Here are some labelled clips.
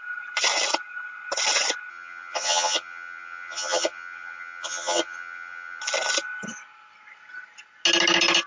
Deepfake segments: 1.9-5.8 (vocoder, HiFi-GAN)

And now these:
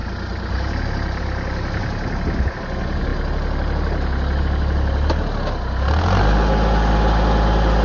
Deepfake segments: none

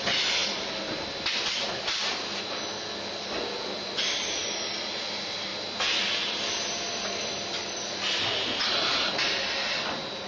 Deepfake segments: none

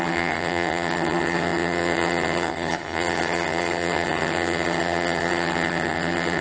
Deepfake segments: 0.0-6.4 (vocoder, HiFi-GAN)